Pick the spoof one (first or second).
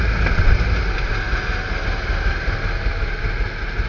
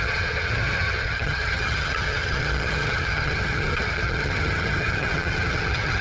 second